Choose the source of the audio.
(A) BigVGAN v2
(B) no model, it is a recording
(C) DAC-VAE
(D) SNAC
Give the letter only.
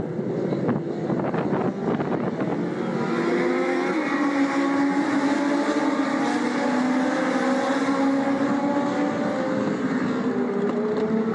B